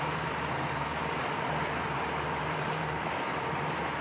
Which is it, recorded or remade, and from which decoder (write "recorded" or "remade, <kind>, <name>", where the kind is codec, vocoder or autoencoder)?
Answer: remade, vocoder, BigVGAN v2